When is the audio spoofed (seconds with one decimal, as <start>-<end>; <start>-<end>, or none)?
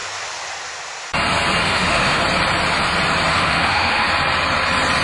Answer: 1.6-2.2; 3.3-4.1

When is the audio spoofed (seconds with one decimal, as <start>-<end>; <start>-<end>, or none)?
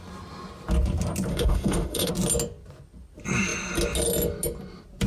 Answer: 1.3-2.1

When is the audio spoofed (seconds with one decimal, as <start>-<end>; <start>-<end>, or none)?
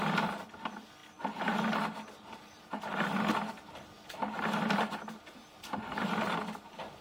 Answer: none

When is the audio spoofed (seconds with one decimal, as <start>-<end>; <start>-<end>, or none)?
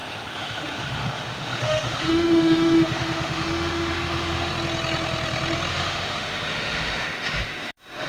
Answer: 0.0-4.5; 5.7-8.1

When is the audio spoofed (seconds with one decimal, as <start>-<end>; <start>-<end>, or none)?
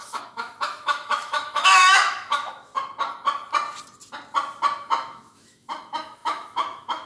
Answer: 0.0-2.7; 4.8-7.1